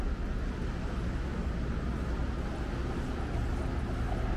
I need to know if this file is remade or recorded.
recorded